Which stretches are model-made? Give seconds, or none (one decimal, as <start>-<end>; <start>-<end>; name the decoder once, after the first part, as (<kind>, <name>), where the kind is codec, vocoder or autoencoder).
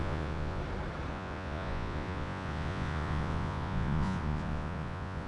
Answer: 0.0-0.6 (vocoder, Vocos); 1.1-5.3